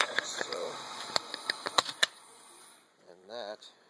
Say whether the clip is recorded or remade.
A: remade